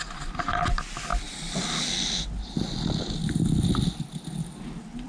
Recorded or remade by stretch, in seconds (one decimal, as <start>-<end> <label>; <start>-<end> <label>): 0.0-5.1 recorded